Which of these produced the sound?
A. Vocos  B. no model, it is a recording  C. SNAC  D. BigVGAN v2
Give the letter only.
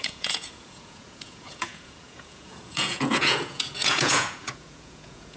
A